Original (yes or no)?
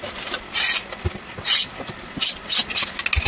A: yes